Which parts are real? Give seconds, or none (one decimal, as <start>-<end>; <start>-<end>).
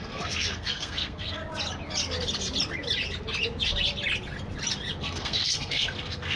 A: 1.4-5.0